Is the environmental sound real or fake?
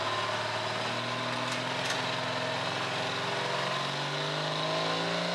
real